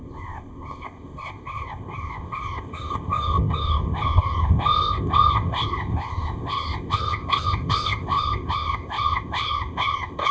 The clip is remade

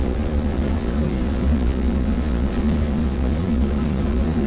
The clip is remade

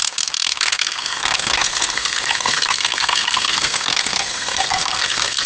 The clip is remade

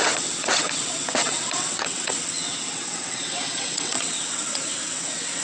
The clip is remade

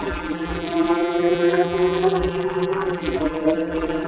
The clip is remade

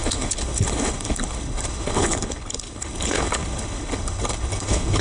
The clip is remade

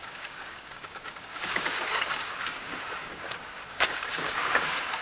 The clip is remade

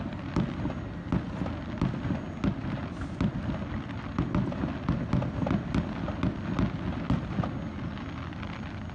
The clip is recorded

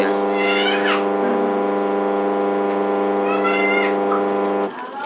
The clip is recorded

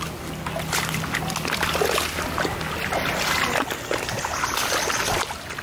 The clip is recorded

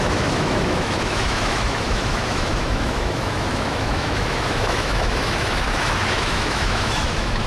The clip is remade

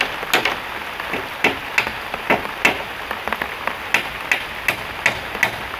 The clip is recorded